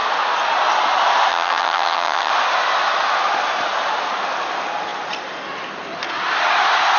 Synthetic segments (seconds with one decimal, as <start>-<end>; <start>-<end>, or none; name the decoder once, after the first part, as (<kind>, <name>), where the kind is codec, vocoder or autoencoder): 1.3-2.3 (vocoder, HiFi-GAN)